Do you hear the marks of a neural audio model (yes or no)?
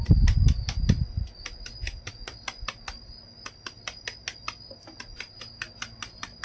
no